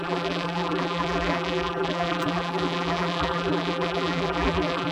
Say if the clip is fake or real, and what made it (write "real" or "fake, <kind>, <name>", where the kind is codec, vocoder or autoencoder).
fake, vocoder, BigVGAN v2